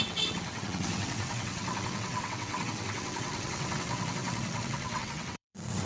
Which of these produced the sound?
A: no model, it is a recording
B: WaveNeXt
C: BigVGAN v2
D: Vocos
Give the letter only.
B